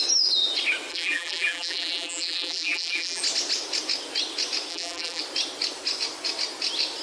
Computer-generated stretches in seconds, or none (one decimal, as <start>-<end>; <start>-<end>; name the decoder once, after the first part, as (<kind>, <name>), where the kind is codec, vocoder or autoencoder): 0.9-3.2 (vocoder, BigVGAN v2); 4.7-5.2